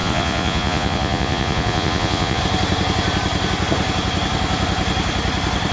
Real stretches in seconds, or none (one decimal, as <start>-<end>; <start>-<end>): 2.4-5.7